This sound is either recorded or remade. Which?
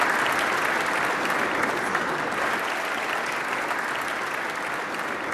recorded